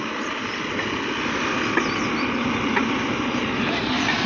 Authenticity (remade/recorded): recorded